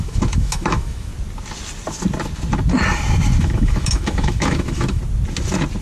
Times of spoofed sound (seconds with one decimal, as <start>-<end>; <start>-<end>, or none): 0.0-1.1; 3.4-5.0